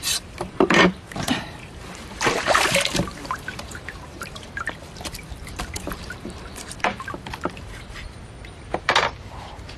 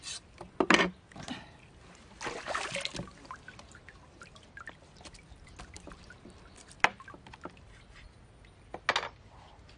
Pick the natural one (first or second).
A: second